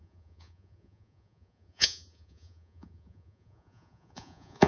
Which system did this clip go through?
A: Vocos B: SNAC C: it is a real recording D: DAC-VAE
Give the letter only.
A